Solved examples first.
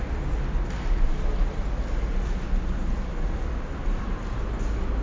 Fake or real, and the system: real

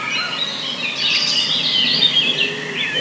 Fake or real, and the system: real